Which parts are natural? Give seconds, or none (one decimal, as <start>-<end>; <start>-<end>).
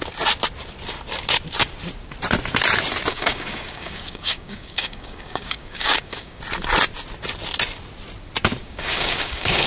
0.0-3.1; 6.4-8.6